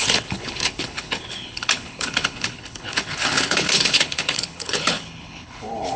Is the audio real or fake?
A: fake